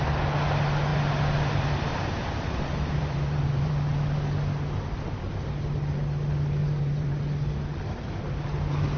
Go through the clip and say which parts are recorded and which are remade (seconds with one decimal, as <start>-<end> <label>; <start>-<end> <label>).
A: 0.0-1.9 recorded; 1.9-3.7 remade; 3.7-6.6 recorded; 6.6-7.2 remade; 7.2-9.0 recorded